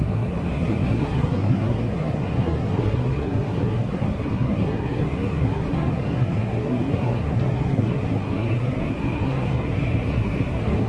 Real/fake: fake